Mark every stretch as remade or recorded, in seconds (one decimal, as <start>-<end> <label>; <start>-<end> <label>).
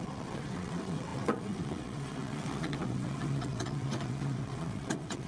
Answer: 0.0-5.3 remade